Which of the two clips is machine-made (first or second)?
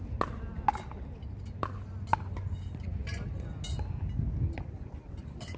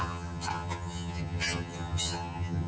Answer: second